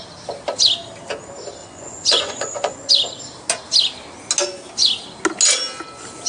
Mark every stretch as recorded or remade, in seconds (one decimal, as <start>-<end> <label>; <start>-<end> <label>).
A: 0.0-1.6 recorded; 1.6-2.9 remade; 2.9-6.3 recorded